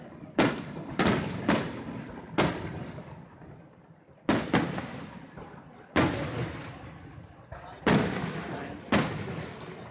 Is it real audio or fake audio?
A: real